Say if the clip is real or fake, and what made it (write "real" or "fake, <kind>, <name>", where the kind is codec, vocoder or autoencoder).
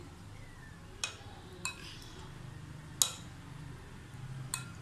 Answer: real